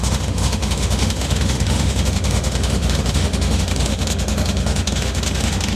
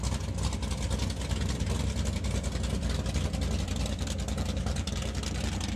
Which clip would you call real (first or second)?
second